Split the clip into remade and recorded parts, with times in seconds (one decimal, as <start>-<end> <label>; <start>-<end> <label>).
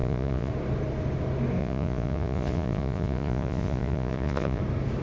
0.0-0.5 remade; 0.5-1.6 recorded; 1.6-4.6 remade; 4.6-5.0 recorded